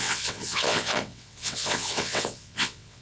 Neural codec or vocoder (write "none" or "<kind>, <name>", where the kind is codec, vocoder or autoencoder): vocoder, WaveNeXt